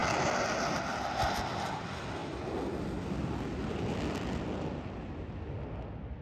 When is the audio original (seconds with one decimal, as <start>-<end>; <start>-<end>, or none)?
0.0-6.2